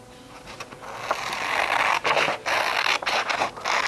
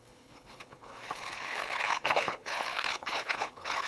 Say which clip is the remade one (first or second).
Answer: second